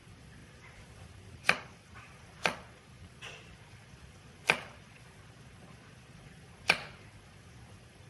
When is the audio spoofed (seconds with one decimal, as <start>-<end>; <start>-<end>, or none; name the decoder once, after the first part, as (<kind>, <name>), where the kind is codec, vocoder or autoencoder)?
0.0-8.1 (vocoder, Vocos)